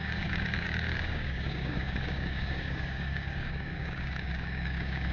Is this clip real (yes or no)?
no